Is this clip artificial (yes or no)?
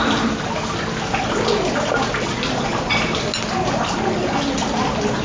no